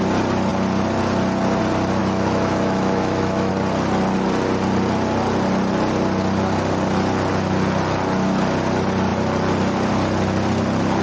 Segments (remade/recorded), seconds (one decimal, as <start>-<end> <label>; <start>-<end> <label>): 0.0-2.0 recorded; 2.0-3.5 remade; 3.5-11.0 recorded